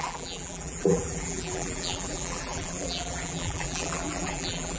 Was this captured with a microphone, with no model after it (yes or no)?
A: no